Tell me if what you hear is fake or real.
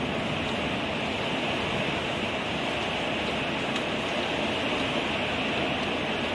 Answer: real